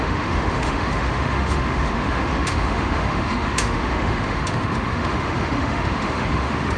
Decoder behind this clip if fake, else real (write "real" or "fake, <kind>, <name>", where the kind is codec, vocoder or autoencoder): fake, autoencoder, DAC-VAE